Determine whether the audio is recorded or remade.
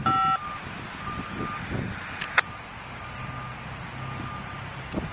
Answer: recorded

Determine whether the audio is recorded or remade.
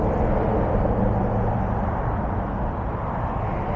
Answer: recorded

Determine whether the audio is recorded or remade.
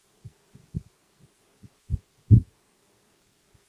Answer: remade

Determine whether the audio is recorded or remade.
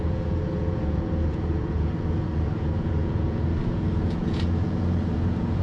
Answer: remade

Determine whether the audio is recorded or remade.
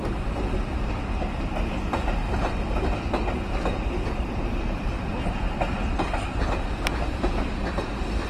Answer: recorded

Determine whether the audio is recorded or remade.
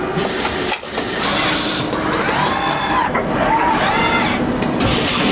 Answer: recorded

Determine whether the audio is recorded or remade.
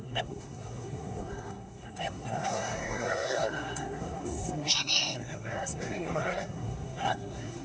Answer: remade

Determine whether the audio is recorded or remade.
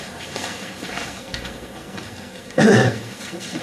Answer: remade